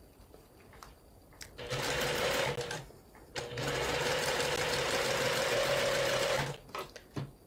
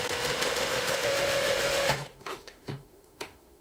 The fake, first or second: second